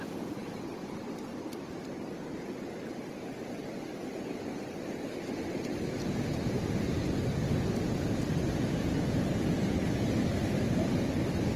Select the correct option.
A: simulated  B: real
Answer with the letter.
B